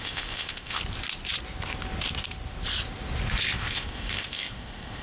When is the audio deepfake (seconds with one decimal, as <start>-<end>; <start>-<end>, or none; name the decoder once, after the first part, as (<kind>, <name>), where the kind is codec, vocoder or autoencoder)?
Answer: 0.0-0.8 (codec, ZipCodec); 3.4-5.0